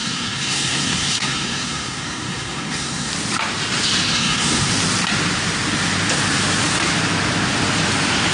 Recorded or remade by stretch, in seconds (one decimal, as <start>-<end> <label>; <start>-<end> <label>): 0.0-3.1 remade; 3.1-4.1 recorded; 4.1-4.7 remade; 4.7-8.3 recorded